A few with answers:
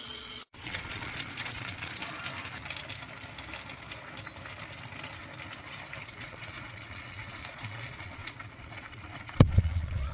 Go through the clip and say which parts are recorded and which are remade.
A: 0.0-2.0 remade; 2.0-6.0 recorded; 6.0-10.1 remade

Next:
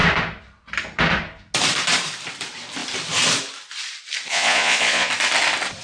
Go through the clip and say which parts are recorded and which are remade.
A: 0.0-4.3 recorded; 4.3-5.1 remade; 5.1-5.8 recorded

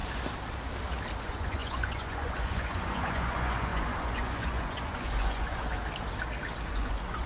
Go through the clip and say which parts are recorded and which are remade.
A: 0.0-1.2 recorded; 1.2-5.7 remade; 5.7-6.7 recorded; 6.7-7.3 remade

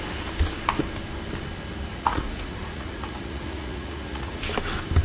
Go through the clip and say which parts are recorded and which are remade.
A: 0.0-1.9 recorded; 1.9-4.4 remade; 4.4-5.0 recorded